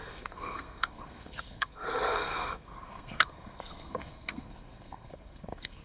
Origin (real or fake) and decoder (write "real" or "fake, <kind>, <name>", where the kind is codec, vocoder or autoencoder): fake, codec, SNAC